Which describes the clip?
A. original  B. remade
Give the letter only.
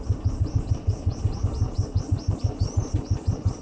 A